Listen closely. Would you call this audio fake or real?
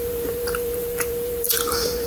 fake